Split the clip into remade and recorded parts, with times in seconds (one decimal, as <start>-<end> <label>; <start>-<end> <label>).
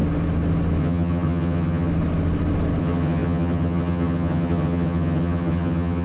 0.0-0.8 recorded; 0.8-1.9 remade; 1.9-2.8 recorded; 2.8-6.0 remade